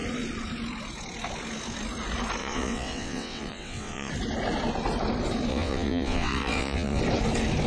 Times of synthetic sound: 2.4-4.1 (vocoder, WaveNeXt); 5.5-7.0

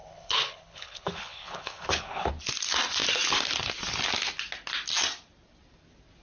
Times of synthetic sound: 0.0-2.3 (codec, HILCodec)

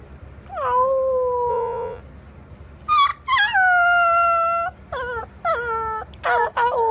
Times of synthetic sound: 1.5-2.0 (vocoder, Vocos)